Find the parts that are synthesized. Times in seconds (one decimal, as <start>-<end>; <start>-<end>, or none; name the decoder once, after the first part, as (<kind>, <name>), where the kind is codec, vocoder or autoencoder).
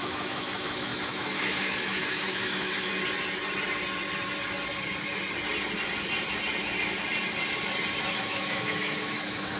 0.0-2.9 (autoencoder, DAC-VAE); 8.1-9.6